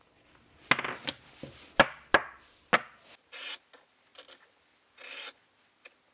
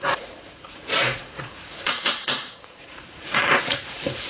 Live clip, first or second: first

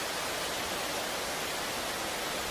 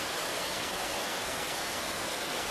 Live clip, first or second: first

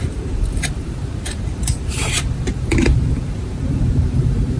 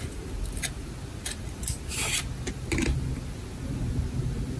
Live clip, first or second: second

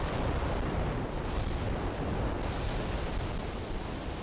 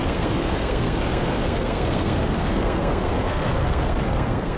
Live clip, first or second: first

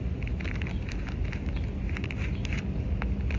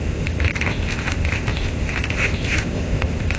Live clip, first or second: first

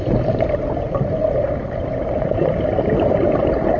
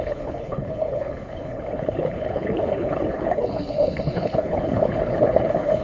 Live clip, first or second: first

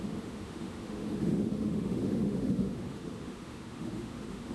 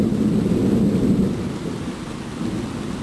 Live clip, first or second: second